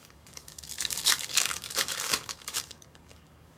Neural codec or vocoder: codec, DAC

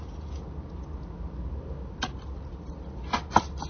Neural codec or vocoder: none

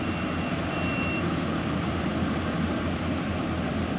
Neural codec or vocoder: none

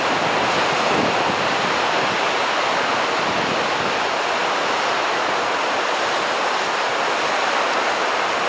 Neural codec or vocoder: none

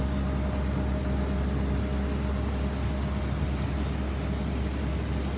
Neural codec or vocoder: none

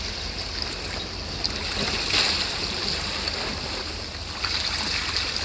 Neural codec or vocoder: none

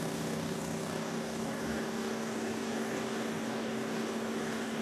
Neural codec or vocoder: codec, DAC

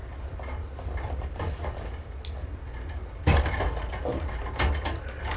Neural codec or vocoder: none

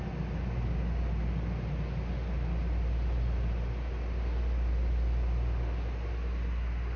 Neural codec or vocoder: none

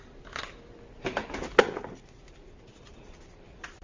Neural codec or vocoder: none